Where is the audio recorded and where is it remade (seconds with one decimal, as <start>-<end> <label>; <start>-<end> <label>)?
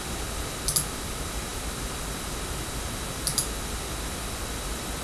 0.0-5.0 recorded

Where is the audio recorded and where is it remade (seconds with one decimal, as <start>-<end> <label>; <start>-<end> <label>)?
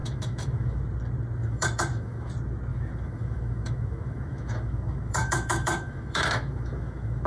0.0-0.8 remade; 0.8-1.4 recorded; 1.4-2.3 remade; 2.3-2.7 recorded; 2.7-7.3 remade